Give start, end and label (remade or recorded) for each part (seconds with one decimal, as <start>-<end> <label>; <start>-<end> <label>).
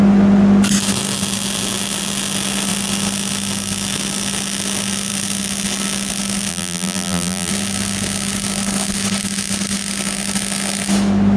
0.0-6.5 recorded; 6.5-7.5 remade; 7.5-11.4 recorded